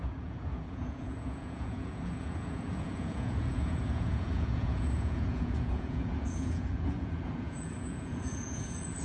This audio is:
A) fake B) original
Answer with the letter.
A